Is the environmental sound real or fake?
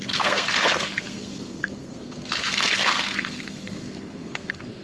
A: fake